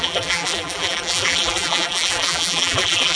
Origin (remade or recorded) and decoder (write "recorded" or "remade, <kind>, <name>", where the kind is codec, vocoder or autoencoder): remade, vocoder, BigVGAN v2